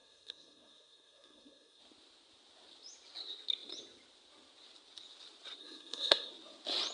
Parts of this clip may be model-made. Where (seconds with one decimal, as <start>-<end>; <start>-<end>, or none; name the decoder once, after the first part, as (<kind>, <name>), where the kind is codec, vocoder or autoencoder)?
0.0-1.8 (codec, SNAC); 5.6-6.3